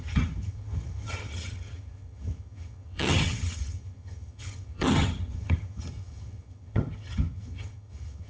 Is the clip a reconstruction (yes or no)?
yes